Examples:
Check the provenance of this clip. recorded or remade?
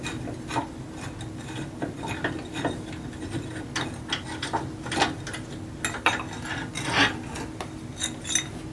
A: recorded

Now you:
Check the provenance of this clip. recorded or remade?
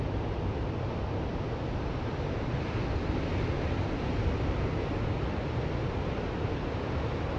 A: recorded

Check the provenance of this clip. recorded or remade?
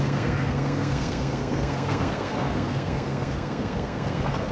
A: remade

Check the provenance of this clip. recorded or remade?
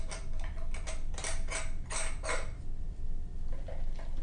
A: recorded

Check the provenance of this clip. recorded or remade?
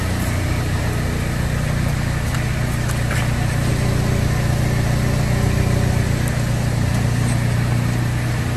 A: recorded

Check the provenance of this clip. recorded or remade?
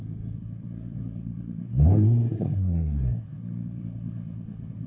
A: remade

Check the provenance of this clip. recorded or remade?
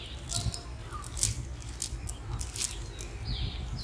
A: recorded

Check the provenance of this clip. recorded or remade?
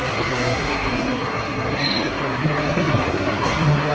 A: remade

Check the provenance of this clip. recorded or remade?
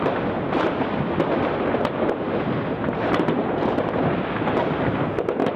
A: recorded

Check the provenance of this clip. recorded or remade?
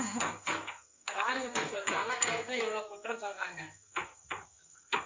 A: remade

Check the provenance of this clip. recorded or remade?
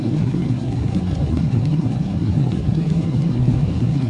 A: remade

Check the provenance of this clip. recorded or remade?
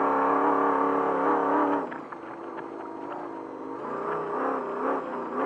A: recorded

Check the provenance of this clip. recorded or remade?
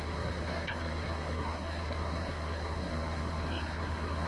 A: remade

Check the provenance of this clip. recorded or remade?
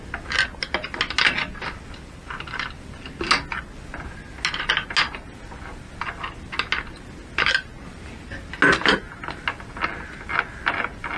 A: recorded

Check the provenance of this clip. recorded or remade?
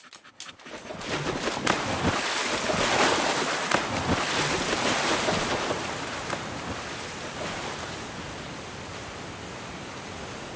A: recorded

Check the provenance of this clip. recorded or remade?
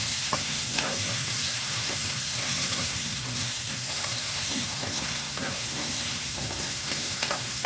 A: remade